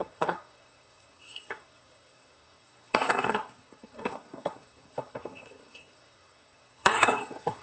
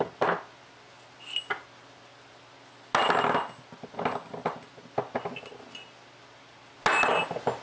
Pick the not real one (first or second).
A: first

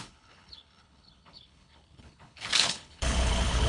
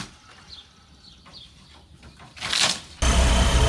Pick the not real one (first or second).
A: first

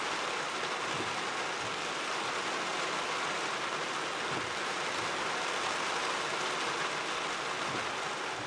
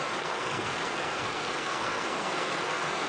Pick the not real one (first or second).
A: second